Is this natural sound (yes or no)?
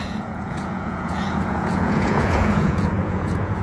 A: no